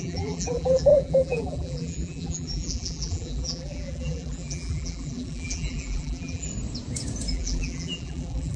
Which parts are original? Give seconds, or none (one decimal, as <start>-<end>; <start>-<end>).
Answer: 6.5-7.3